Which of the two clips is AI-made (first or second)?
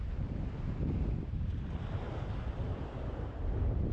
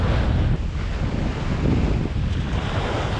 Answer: first